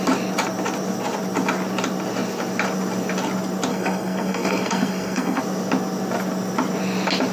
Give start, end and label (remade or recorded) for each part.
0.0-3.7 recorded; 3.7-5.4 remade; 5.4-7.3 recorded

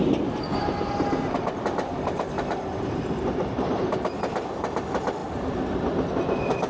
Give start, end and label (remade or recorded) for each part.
0.0-6.7 recorded

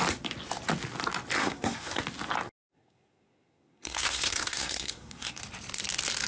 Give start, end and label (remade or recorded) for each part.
0.0-1.4 recorded; 1.4-2.0 remade; 2.0-2.7 recorded; 2.7-5.4 remade; 5.4-6.3 recorded

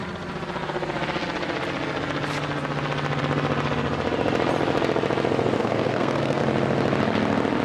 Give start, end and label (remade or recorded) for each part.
0.0-5.6 recorded; 5.6-6.4 remade; 6.4-7.6 recorded

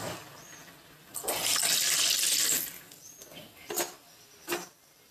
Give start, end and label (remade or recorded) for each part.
0.0-5.1 recorded

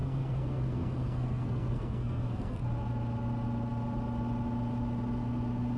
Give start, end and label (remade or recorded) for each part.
0.0-2.6 remade; 2.6-5.8 recorded